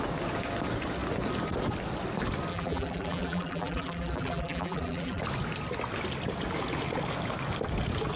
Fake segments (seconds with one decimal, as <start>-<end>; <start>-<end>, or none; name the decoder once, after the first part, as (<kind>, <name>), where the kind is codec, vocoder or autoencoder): 2.5-5.2 (vocoder, BigVGAN v2)